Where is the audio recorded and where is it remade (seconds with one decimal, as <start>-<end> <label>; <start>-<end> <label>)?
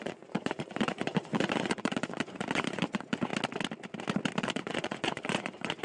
0.0-3.3 remade; 3.3-4.4 recorded; 4.4-5.8 remade